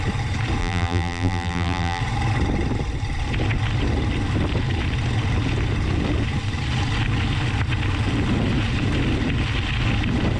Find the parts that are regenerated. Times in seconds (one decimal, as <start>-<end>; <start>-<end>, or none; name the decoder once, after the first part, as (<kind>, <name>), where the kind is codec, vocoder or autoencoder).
0.6-2.0 (vocoder, BigVGAN v2)